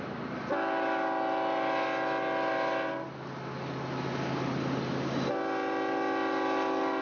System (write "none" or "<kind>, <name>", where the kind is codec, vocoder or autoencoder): none